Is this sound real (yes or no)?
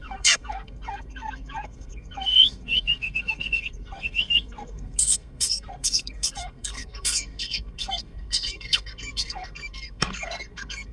no